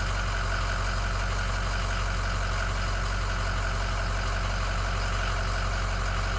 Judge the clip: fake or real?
real